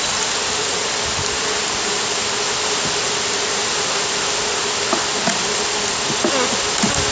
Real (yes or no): yes